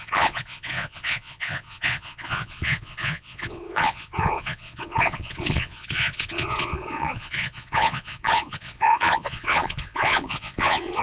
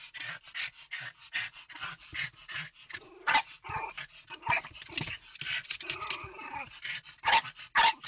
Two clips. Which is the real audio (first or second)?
second